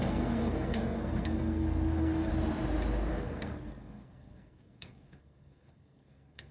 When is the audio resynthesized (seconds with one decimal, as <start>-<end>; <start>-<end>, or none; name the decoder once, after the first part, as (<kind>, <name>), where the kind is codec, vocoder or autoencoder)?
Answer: 0.0-2.3 (codec, SNAC); 3.1-6.5